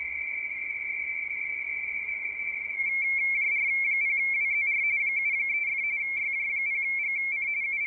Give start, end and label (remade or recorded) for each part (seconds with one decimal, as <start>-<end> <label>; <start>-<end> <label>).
0.0-2.1 recorded; 2.1-2.9 remade; 2.9-7.9 recorded